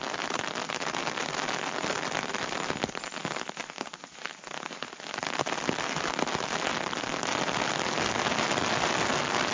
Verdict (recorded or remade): recorded